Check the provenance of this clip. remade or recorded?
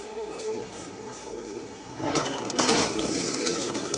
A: remade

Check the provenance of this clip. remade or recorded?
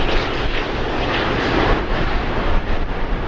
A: recorded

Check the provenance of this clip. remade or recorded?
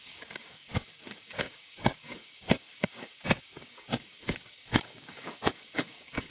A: remade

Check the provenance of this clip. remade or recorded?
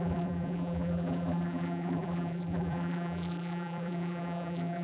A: remade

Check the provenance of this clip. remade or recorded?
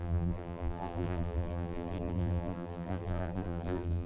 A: remade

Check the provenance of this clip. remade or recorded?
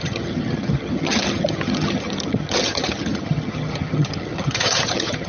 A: remade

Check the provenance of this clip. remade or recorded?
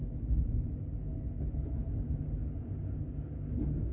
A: recorded